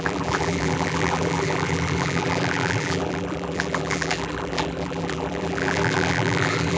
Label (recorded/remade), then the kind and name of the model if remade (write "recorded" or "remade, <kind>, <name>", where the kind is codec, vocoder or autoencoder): remade, vocoder, BigVGAN v2